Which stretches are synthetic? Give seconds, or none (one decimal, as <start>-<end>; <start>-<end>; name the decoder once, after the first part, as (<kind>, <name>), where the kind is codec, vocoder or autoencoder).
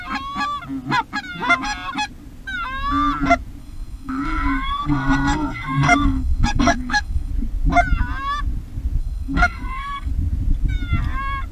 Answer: 3.6-7.3 (codec, SNAC); 9.0-10.1